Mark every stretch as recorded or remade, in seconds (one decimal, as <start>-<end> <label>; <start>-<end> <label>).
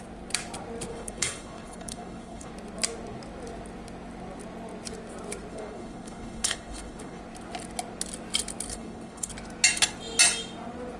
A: 0.0-0.9 recorded; 0.9-2.5 remade; 2.5-5.5 recorded; 5.5-7.2 remade; 7.2-8.7 recorded; 8.7-9.3 remade; 9.3-11.0 recorded